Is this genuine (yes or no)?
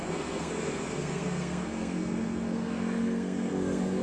no